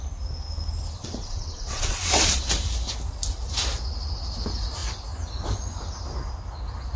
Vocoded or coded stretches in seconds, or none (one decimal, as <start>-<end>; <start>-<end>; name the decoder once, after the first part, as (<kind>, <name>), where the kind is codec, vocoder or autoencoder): 1.0-2.5 (vocoder, WaveNeXt)